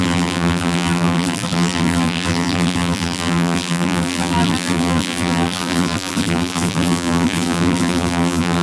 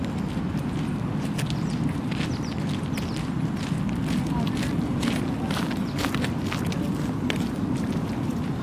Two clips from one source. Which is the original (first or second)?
second